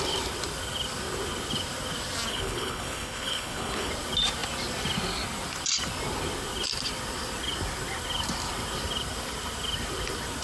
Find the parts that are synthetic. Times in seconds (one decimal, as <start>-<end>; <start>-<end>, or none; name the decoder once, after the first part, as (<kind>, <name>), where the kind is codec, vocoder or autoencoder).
2.3-3.9 (codec, HILCodec)